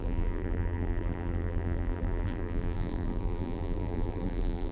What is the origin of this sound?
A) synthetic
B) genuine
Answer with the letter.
A